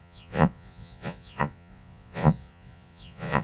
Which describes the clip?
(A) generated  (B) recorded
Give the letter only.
A